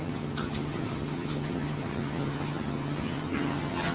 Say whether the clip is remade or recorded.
remade